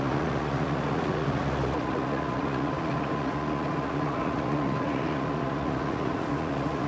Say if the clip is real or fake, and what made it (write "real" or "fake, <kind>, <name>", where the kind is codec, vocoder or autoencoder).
fake, vocoder, Vocos